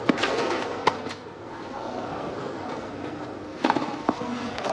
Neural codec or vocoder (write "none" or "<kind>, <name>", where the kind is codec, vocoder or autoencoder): codec, SNAC